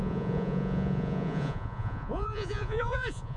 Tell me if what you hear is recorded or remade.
remade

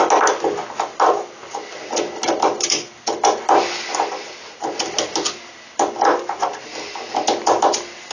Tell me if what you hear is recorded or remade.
recorded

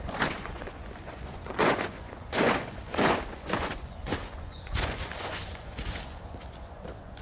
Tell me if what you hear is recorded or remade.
remade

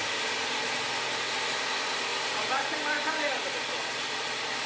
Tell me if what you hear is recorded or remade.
recorded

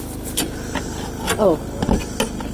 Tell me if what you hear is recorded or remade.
recorded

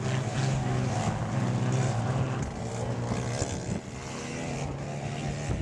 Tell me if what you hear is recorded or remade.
recorded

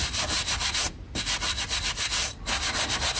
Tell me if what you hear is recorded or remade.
recorded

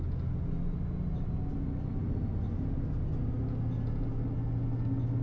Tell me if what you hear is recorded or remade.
recorded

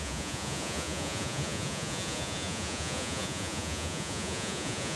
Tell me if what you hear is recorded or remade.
remade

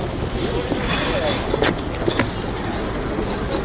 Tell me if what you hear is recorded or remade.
recorded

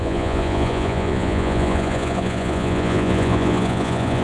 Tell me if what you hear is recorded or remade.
remade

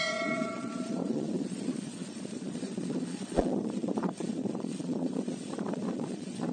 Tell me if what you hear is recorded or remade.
remade